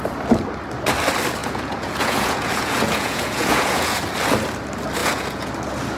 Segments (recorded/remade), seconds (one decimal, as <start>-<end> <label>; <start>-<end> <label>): 0.0-1.4 recorded; 1.4-4.0 remade; 4.0-5.0 recorded; 5.0-5.5 remade; 5.5-6.0 recorded